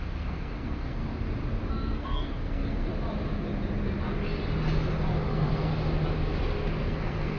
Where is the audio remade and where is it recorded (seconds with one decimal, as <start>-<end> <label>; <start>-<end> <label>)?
0.0-1.0 remade; 1.0-1.7 recorded; 1.7-2.9 remade; 2.9-5.3 recorded; 5.3-5.7 remade; 5.7-6.8 recorded; 6.8-7.4 remade